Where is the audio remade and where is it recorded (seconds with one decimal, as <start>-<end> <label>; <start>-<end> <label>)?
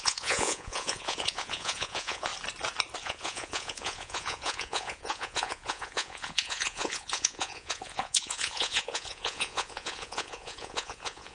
0.0-2.3 remade; 2.3-3.0 recorded; 3.0-11.3 remade